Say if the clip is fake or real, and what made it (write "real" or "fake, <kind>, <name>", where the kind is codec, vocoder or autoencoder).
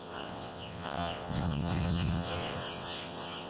fake, vocoder, WaveNeXt